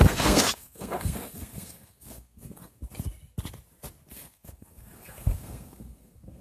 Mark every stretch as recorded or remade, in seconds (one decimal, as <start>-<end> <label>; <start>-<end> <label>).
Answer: 0.0-2.8 remade; 2.8-4.1 recorded; 4.1-6.4 remade